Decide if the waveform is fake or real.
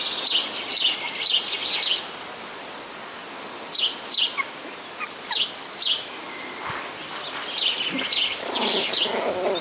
real